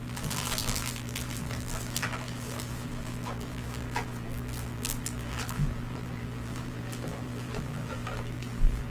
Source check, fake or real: fake